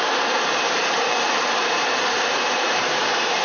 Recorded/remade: remade